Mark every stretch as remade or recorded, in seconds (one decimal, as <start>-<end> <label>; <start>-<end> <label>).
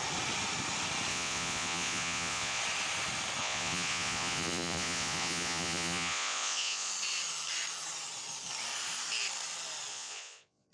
0.0-1.1 recorded; 1.1-2.6 remade; 2.6-3.4 recorded; 3.4-6.9 remade; 6.9-9.9 recorded; 9.9-10.7 remade